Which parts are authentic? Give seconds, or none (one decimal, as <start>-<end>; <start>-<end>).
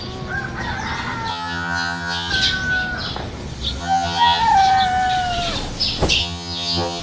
0.0-1.3; 2.3-3.8; 4.4-6.2